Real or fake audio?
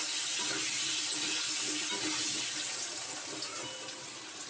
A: real